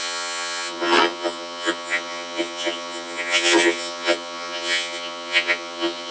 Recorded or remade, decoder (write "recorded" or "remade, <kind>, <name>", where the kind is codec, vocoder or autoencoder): remade, vocoder, HiFi-GAN